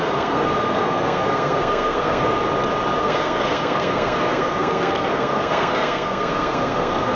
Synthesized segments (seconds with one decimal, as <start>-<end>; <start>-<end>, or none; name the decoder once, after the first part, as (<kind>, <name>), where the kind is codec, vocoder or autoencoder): 0.0-2.4 (codec, SNAC); 3.0-7.2